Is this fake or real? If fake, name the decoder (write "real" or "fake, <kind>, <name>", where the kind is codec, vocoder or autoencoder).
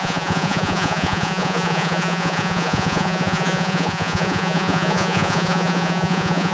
fake, vocoder, Vocos